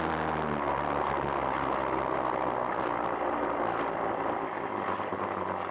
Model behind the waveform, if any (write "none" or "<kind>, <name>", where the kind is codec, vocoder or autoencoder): none